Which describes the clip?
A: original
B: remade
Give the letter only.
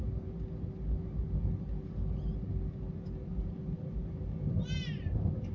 A